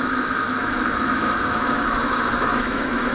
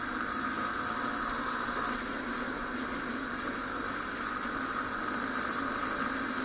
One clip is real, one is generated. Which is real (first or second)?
second